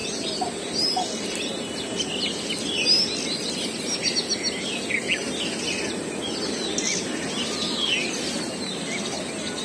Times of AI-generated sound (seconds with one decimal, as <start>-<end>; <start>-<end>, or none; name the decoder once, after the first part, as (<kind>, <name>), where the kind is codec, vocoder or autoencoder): none